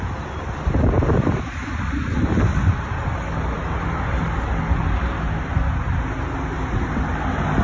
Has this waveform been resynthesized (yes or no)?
no